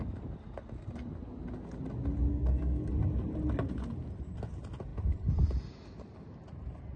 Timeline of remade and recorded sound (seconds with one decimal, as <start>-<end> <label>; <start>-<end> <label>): 0.0-2.3 recorded; 2.3-2.9 remade; 2.9-7.0 recorded